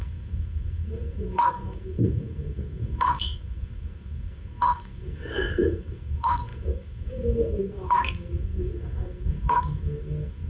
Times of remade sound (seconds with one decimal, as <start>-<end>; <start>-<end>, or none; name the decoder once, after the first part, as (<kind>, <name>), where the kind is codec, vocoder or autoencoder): 0.0-10.5 (codec, SNAC)